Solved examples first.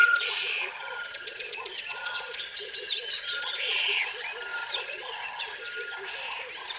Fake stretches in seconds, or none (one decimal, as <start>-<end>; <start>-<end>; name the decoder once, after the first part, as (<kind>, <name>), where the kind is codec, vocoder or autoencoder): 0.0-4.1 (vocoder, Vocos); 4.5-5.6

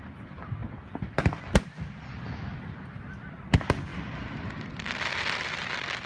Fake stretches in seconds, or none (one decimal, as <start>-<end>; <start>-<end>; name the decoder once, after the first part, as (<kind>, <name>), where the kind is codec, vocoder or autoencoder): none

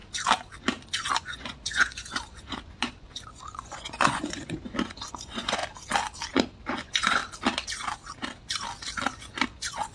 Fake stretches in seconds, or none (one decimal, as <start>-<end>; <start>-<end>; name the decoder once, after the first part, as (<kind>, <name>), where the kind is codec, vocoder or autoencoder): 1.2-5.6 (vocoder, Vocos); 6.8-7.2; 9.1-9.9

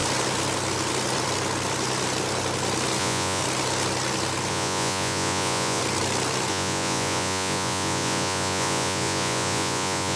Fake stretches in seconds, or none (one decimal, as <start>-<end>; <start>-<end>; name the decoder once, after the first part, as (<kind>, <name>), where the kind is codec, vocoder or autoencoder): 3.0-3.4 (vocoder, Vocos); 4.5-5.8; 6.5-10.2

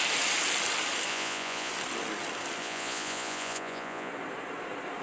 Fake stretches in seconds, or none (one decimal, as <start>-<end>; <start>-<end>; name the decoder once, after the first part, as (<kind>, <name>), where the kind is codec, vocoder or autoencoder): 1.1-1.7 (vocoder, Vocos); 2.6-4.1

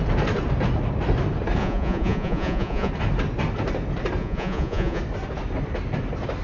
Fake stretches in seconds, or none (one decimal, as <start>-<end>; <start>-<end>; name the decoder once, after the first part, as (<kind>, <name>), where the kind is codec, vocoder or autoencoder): 1.6-2.9 (vocoder, Vocos); 4.2-5.0